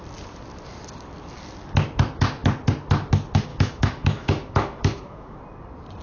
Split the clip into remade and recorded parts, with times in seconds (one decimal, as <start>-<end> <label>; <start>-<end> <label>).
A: 0.0-3.5 recorded; 3.5-5.4 remade; 5.4-6.0 recorded